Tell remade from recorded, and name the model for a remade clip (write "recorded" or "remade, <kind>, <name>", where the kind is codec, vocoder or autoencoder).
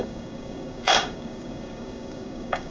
remade, codec, DAC